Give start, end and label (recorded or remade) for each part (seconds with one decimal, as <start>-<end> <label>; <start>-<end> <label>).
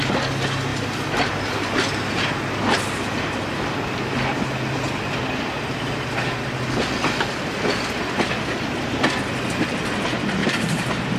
0.0-10.4 recorded; 10.4-11.2 remade